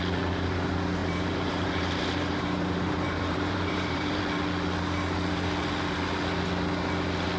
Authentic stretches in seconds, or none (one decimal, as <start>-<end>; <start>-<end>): 0.0-1.0; 4.2-7.4